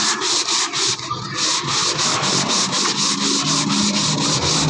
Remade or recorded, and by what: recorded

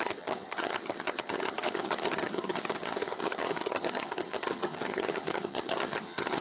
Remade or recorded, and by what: remade, vocoder, HiFi-GAN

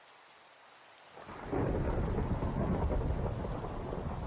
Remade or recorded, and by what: recorded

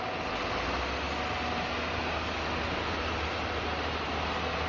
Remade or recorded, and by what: recorded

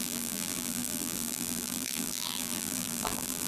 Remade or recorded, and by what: remade, vocoder, BigVGAN v2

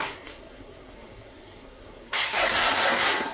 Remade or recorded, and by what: remade, codec, SNAC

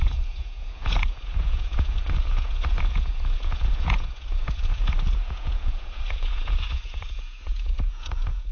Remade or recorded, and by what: remade, vocoder, Vocos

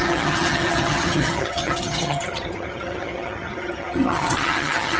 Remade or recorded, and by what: remade, vocoder, HiFi-GAN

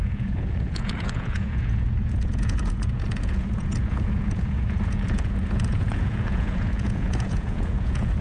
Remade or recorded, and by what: remade, vocoder, Vocos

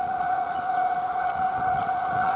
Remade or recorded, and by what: remade, vocoder, Vocos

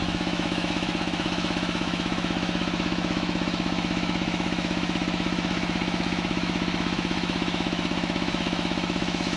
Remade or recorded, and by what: remade, autoencoder, DAC-VAE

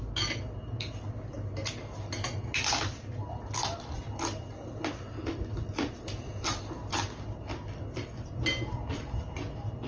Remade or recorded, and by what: recorded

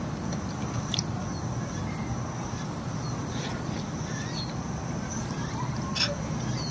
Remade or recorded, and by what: recorded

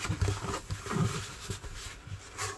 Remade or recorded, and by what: recorded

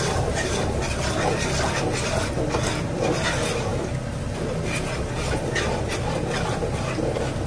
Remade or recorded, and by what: recorded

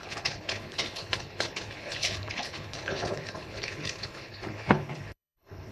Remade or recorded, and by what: remade, codec, HILCodec